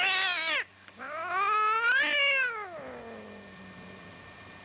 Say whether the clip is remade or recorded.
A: recorded